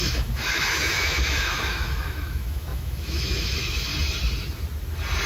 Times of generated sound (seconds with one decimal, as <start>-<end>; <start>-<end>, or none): 0.0-3.9